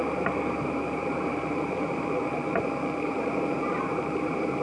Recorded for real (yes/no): no